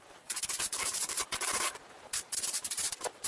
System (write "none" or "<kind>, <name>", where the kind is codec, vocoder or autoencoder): vocoder, BigVGAN v2